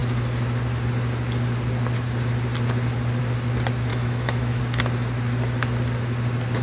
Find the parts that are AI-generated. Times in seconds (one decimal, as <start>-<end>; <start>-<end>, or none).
3.9-4.6